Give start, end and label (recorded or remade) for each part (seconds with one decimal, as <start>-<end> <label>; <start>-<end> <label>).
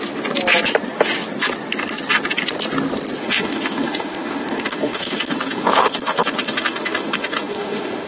0.0-3.2 recorded; 3.2-8.1 remade